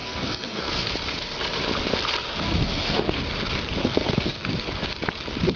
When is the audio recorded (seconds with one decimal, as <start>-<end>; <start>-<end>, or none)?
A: 0.9-2.3; 3.2-3.8; 4.4-5.6